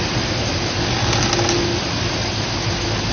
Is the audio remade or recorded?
recorded